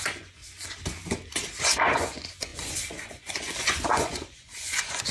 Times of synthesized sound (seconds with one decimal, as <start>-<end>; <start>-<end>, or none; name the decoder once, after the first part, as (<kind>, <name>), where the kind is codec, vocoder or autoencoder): 0.0-0.4 (vocoder, Vocos); 1.6-5.1

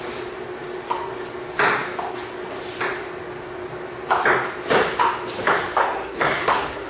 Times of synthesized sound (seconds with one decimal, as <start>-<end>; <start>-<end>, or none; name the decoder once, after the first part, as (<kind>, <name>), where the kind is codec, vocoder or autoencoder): 5.8-6.9 (codec, SNAC)

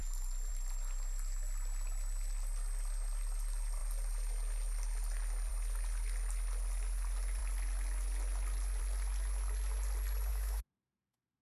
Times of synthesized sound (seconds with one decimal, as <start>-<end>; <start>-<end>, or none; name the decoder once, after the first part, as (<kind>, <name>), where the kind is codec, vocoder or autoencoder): 10.3-11.4 (autoencoder, DAC-VAE)

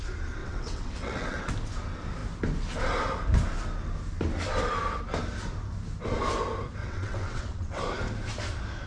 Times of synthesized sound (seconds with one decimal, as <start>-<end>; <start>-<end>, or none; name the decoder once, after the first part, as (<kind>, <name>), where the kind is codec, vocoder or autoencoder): 0.4-1.5 (vocoder, WaveNeXt); 6.8-7.8

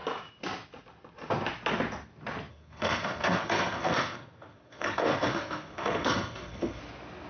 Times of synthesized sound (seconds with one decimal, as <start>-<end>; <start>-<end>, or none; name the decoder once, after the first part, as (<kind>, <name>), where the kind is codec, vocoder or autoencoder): 2.5-6.8 (codec, SNAC)